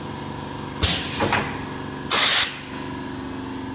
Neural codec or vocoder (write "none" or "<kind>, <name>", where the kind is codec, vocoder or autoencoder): none